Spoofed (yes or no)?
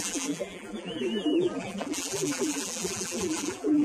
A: yes